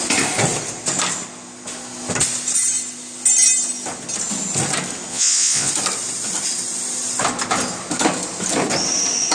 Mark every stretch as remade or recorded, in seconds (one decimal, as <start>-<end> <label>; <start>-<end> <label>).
0.0-5.1 recorded; 5.1-5.7 remade; 5.7-9.3 recorded

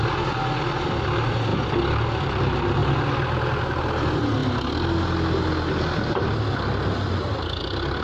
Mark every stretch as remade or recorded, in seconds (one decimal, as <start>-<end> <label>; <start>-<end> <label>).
0.0-8.0 recorded

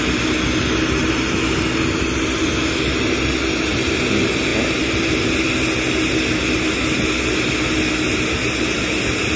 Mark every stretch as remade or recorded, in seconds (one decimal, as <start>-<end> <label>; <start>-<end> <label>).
0.0-9.4 recorded